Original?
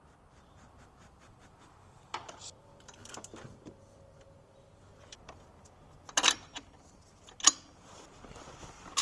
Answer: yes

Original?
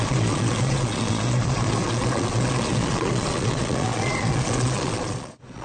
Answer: no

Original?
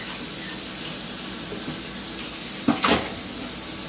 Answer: yes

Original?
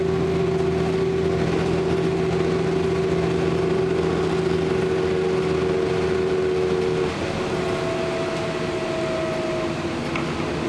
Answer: yes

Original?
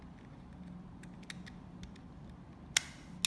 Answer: yes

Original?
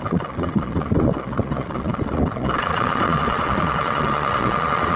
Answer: no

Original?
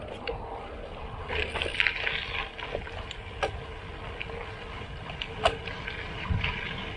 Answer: yes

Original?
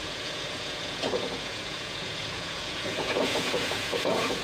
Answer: no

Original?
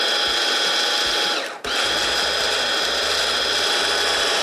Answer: yes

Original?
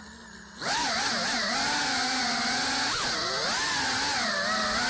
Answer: yes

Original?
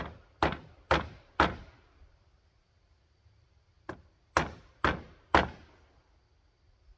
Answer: yes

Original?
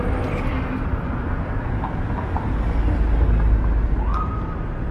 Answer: yes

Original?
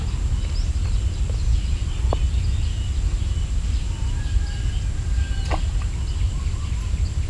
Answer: yes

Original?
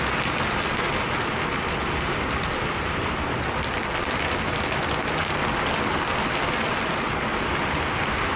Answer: yes